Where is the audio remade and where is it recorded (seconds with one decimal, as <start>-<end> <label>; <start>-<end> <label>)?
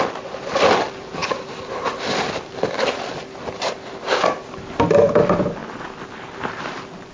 0.0-7.1 recorded